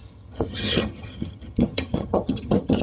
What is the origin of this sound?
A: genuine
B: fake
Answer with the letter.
B